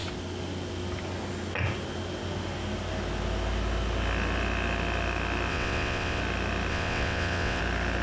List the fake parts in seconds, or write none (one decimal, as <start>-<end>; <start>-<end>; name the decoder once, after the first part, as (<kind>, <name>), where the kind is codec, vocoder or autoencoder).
5.5-6.2 (vocoder, WaveNeXt); 6.7-7.6